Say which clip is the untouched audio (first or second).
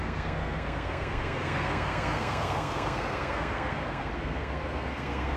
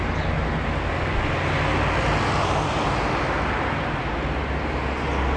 second